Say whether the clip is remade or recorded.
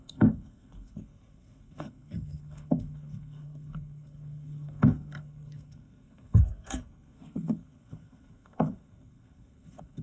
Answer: remade